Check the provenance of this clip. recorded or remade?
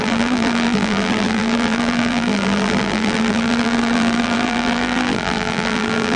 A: remade